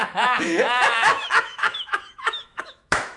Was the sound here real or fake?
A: fake